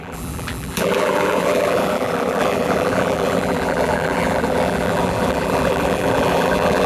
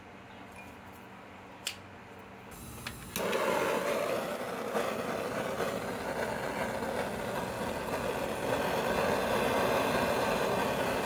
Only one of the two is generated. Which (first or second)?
first